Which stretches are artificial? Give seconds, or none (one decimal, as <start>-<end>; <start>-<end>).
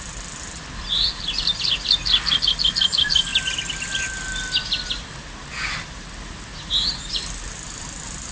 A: none